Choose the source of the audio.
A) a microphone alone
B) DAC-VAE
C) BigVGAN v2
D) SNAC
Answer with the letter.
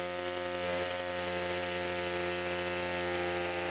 A